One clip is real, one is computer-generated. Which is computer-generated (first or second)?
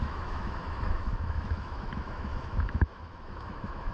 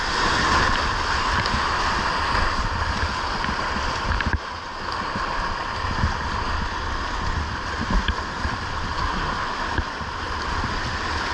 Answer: first